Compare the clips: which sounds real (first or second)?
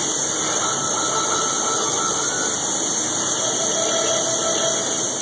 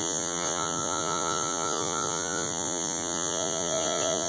first